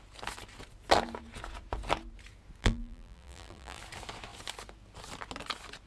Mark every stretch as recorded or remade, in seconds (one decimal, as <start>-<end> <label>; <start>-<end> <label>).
0.0-2.6 recorded; 2.6-3.8 remade; 3.8-5.9 recorded